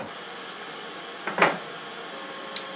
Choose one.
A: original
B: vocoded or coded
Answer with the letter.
A